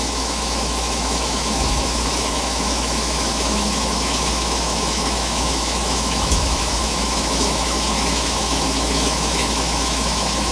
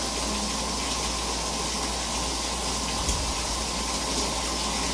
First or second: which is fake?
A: first